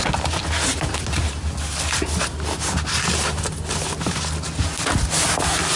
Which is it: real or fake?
real